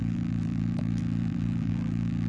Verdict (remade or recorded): remade